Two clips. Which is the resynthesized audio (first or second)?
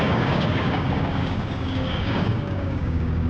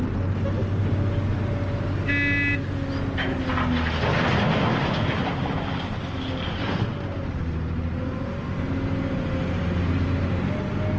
first